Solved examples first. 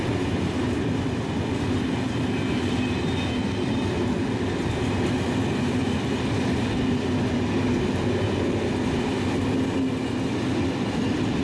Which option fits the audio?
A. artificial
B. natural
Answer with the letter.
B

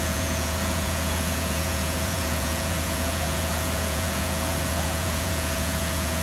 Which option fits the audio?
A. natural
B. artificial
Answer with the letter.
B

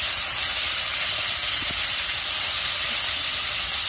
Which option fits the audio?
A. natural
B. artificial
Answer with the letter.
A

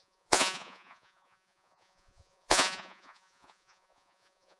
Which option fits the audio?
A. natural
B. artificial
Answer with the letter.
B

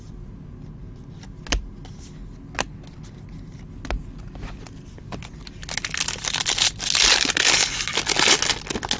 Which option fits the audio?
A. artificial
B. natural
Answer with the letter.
B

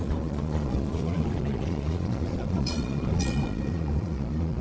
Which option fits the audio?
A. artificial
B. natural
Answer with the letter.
A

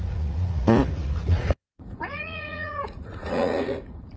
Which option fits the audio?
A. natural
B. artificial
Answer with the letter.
B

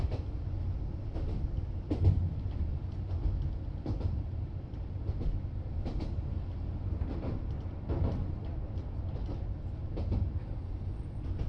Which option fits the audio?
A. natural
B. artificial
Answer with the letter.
A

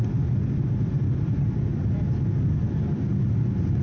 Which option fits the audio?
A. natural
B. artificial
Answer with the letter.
A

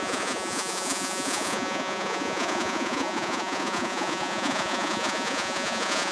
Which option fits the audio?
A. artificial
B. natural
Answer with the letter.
A